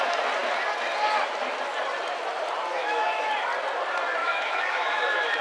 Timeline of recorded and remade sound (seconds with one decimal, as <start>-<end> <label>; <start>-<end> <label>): 0.0-2.8 recorded; 2.8-3.3 remade; 3.3-4.2 recorded; 4.2-5.4 remade